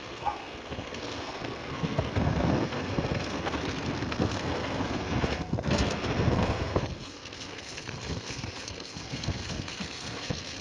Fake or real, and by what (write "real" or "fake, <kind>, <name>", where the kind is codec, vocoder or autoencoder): fake, codec, SNAC